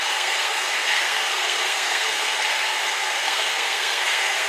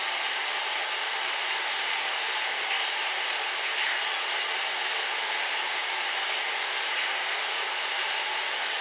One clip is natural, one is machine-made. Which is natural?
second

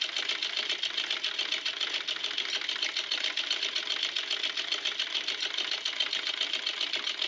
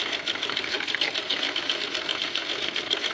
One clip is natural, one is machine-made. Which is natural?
first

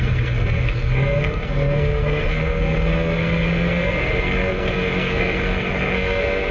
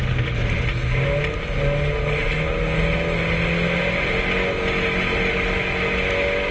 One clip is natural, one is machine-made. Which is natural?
second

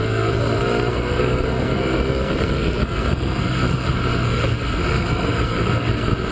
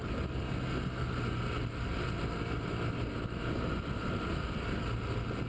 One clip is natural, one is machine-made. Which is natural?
second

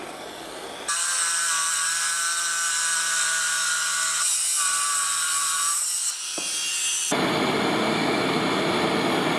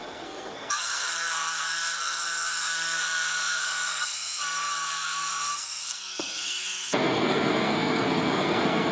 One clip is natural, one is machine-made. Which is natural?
first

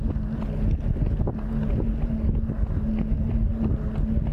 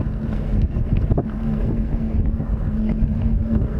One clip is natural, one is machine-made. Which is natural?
first